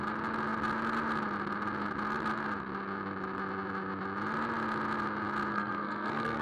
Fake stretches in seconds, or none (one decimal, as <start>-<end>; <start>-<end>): 5.5-6.4

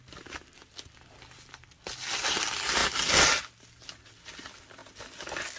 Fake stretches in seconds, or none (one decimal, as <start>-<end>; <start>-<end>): none

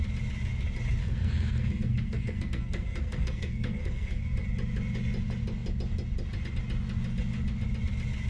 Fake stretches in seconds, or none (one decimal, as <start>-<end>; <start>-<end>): 1.0-4.2

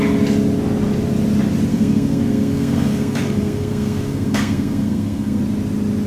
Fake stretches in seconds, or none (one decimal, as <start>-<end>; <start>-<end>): 1.7-5.4

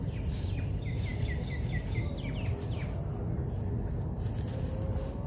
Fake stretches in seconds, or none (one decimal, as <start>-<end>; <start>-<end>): none

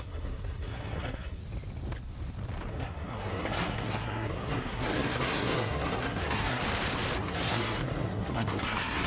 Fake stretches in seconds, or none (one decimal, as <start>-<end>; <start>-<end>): 0.0-1.4; 2.7-6.6; 7.2-9.1